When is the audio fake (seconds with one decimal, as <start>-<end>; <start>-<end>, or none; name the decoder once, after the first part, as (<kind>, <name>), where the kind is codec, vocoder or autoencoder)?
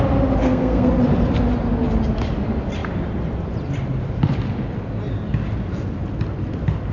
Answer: 0.4-0.9 (codec, SNAC)